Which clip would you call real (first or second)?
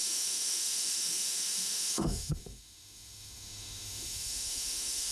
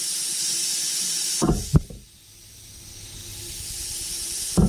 second